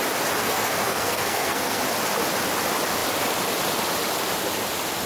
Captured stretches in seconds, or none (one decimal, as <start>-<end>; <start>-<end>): 0.0-0.4; 1.8-5.1